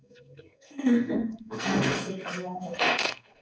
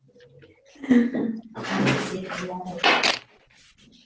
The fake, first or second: first